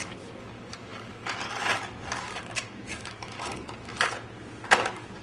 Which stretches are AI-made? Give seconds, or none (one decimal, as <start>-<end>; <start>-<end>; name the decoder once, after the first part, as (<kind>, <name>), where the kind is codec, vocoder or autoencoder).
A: 0.0-3.9 (codec, DAC); 4.7-5.2